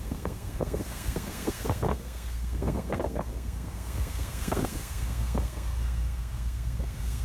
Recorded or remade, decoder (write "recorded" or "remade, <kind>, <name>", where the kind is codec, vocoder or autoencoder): remade, codec, SNAC